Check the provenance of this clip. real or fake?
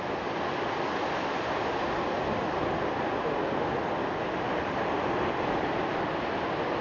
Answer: real